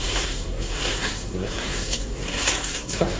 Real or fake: fake